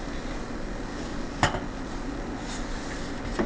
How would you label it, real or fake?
real